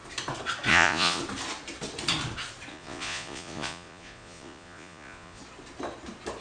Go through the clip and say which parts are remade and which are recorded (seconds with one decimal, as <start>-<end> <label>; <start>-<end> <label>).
0.0-0.7 recorded; 0.7-1.2 remade; 1.2-2.7 recorded; 2.7-5.4 remade; 5.4-6.4 recorded